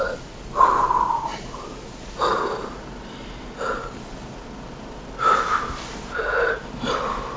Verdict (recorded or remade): recorded